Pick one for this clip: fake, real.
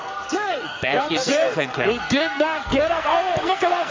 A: fake